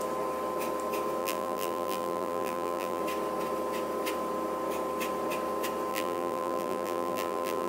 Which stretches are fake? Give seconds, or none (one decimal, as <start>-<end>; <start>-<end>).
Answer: 1.2-3.0; 5.9-7.7